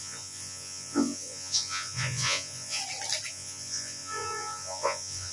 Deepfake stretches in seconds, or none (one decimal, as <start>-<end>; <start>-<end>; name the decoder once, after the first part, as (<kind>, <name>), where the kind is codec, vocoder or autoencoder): 0.0-2.8 (vocoder, Vocos); 3.3-5.3